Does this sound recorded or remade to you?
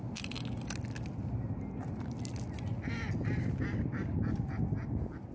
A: recorded